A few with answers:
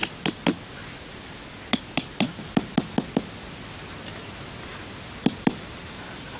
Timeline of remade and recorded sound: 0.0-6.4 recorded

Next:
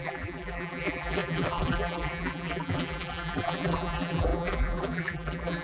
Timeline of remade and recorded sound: 0.0-5.6 remade